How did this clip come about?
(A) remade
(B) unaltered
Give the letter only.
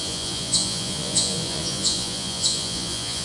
A